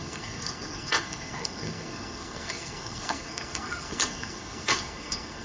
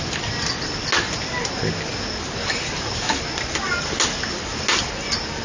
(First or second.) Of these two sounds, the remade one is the first